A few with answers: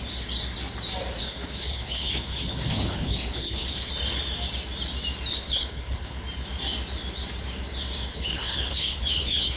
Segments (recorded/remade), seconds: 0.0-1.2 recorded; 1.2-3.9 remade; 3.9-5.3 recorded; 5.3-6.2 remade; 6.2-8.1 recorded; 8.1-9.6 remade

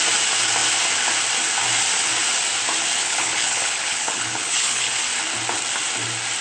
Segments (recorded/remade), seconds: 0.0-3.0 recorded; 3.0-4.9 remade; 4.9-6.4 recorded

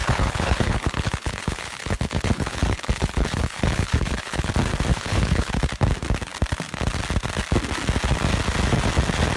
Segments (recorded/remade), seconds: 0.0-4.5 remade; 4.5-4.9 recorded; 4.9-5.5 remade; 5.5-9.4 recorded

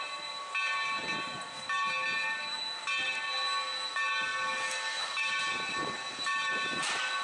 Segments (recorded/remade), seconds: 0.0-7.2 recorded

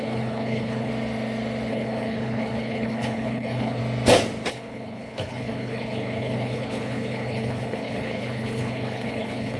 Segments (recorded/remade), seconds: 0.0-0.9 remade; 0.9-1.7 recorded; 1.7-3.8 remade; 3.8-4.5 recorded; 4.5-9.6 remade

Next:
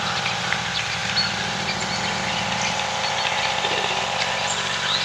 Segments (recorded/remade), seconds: 0.0-5.0 recorded